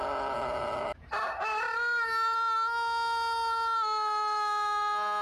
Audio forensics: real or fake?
real